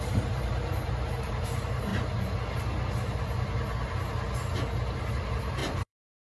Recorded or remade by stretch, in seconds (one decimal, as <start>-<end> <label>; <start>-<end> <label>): 0.0-1.9 remade; 1.9-5.1 recorded; 5.1-6.3 remade